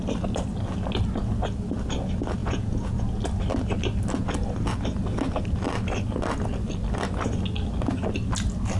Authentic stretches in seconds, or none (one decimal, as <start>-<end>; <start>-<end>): 0.0-2.4; 3.2-8.8